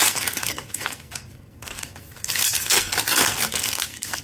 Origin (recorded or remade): remade